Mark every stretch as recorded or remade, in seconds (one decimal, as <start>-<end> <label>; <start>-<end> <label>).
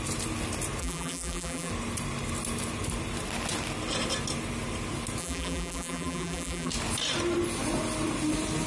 0.0-0.8 recorded; 0.8-1.7 remade; 1.7-5.2 recorded; 5.2-6.7 remade; 6.7-8.7 recorded